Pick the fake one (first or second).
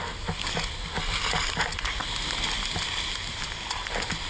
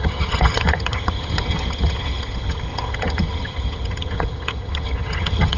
second